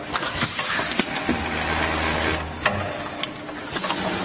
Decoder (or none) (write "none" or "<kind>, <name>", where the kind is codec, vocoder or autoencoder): none